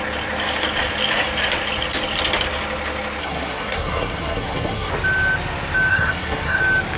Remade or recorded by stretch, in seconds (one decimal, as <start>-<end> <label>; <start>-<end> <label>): 0.0-3.2 recorded; 3.2-4.9 remade; 4.9-5.9 recorded; 5.9-6.6 remade; 6.6-7.0 recorded